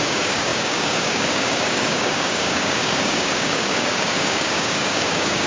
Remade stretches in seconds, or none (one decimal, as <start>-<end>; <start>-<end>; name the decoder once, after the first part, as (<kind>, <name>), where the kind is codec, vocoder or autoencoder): 0.0-5.5 (codec, DAC)